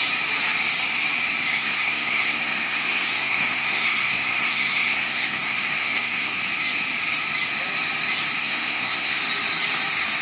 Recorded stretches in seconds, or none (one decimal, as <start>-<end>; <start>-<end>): 0.0-1.5; 6.4-8.4; 9.2-10.2